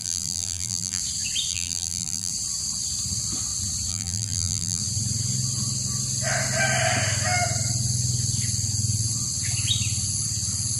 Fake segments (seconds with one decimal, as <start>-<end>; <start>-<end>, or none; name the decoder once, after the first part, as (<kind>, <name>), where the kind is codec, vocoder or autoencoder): 0.0-1.0 (vocoder, BigVGAN v2); 1.5-2.3; 3.9-4.8